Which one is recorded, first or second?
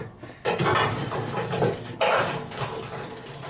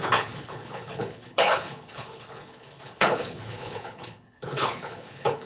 first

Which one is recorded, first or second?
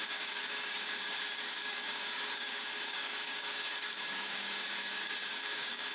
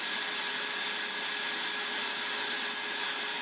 second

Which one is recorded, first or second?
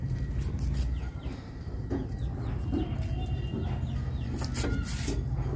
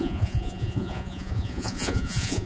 first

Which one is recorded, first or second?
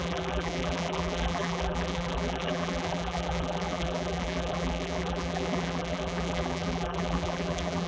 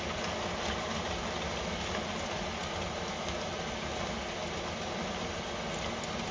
second